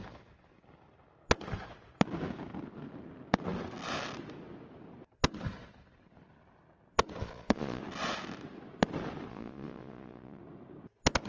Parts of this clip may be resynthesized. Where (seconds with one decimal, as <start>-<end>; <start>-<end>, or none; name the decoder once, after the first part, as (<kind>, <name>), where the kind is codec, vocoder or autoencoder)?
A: 7.2-7.8 (vocoder, Vocos); 9.3-10.4